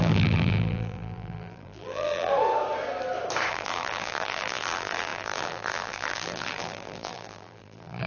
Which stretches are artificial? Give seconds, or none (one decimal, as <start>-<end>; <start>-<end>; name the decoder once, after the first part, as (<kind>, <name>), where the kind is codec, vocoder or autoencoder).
0.0-2.3 (vocoder, BigVGAN v2); 3.5-8.1

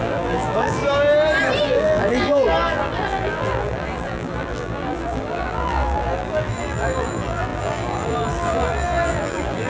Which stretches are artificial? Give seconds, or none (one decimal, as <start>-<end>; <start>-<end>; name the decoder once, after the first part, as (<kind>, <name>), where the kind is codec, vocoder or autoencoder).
0.0-0.8 (vocoder, BigVGAN v2); 1.6-9.7

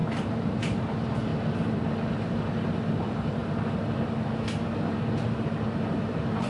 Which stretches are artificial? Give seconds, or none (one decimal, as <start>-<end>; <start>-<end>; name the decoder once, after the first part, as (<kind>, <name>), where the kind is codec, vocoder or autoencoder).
0.0-1.3 (vocoder, BigVGAN v2); 2.1-3.4; 5.9-6.5

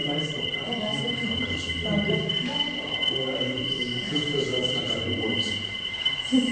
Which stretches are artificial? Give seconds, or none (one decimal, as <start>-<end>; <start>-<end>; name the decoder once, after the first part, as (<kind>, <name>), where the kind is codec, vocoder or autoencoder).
1.0-6.5 (vocoder, BigVGAN v2)

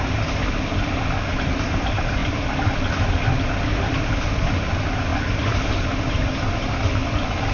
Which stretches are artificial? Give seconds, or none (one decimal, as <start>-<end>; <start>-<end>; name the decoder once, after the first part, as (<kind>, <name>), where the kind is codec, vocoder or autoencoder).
none

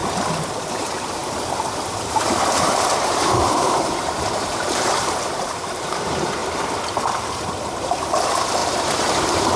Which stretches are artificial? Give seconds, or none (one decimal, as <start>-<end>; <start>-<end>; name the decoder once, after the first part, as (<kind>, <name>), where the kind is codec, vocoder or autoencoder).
0.7-6.4 (vocoder, BigVGAN v2); 7.8-9.6

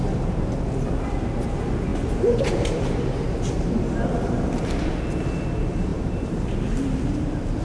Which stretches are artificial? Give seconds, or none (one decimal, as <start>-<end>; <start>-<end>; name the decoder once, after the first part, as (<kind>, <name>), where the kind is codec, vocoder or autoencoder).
1.9-3.3 (vocoder, BigVGAN v2); 5.9-7.6